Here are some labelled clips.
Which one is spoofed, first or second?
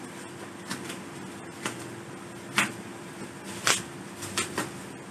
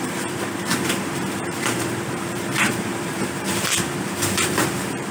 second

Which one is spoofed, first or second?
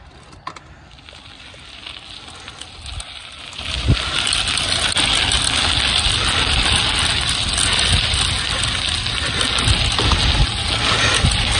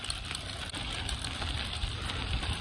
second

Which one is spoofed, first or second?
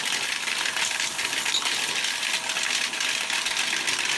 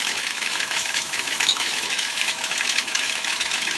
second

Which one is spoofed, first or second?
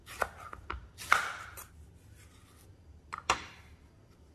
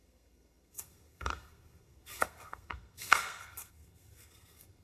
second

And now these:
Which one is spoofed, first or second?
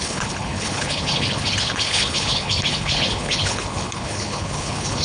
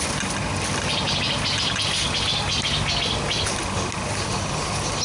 first